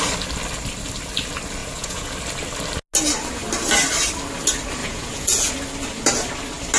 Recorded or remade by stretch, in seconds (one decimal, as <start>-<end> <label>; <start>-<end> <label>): 0.0-1.6 recorded; 1.6-2.1 remade; 2.1-4.8 recorded; 4.8-5.5 remade; 5.5-6.8 recorded